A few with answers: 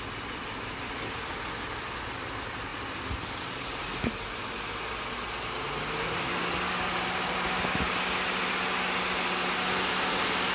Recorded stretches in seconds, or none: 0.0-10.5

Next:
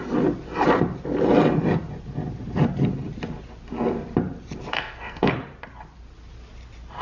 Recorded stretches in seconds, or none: 0.0-4.7; 5.3-7.0

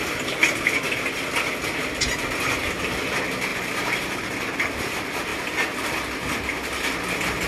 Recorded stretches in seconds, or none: 0.0-3.5; 4.8-7.5

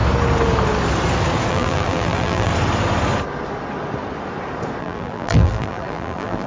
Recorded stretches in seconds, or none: 0.0-1.5; 2.5-4.8

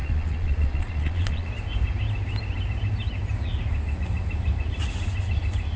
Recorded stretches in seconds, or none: 1.5-5.8